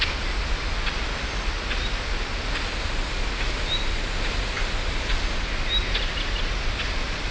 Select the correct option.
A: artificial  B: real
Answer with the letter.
B